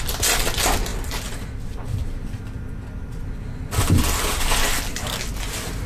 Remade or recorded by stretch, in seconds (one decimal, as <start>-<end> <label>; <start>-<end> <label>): 0.0-5.9 recorded